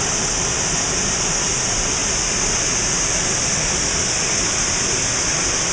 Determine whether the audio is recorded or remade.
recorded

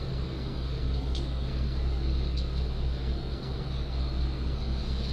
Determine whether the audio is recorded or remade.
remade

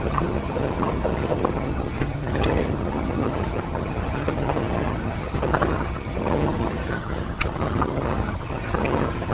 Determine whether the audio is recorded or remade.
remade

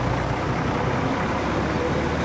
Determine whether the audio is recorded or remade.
recorded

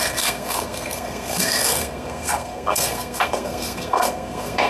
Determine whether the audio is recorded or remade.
remade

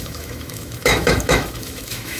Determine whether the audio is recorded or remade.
remade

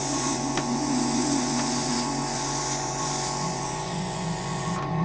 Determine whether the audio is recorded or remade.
remade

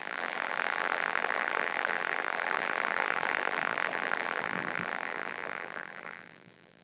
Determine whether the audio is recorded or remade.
remade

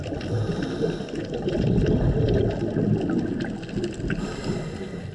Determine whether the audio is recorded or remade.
recorded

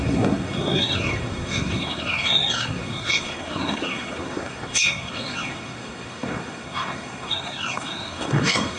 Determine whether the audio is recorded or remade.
remade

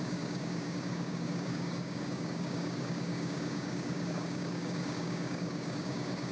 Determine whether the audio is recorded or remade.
remade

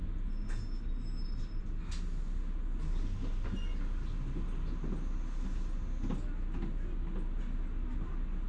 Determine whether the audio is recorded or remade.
recorded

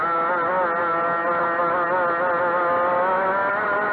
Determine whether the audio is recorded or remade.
recorded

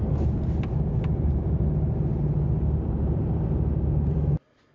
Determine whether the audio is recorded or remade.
recorded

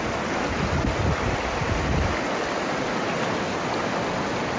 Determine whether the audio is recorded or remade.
recorded